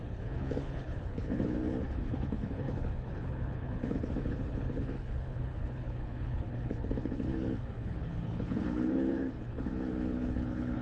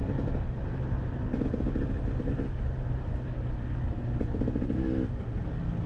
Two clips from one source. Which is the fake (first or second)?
first